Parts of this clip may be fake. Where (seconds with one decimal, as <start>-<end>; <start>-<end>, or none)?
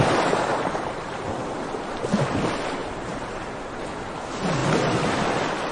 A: 0.5-1.2; 2.8-3.7